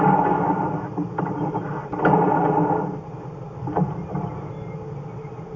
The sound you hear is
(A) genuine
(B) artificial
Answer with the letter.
A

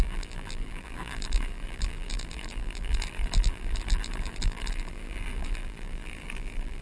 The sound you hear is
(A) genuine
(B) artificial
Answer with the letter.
B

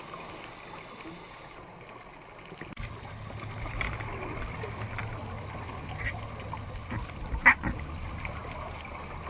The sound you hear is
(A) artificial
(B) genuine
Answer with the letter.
B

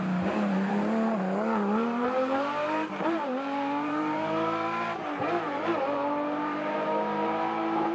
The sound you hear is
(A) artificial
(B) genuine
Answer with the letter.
A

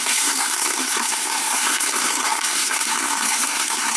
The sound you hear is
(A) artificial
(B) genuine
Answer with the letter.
A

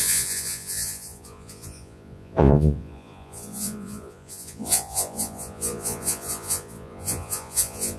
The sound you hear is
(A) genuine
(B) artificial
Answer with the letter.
B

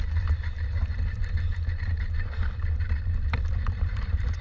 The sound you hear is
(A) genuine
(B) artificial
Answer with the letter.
B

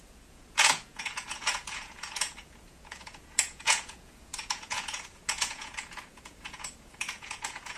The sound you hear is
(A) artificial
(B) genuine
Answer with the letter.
A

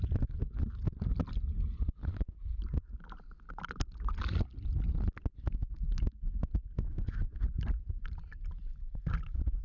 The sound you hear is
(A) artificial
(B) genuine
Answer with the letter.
B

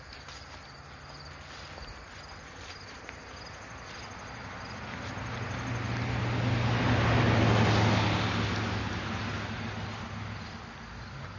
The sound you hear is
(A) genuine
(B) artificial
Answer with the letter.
A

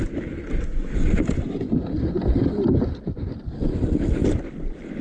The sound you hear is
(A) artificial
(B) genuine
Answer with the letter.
B